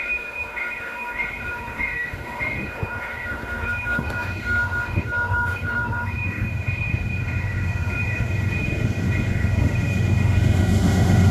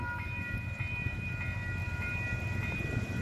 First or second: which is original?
second